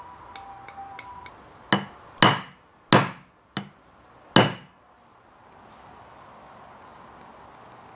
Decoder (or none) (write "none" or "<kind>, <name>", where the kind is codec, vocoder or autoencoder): none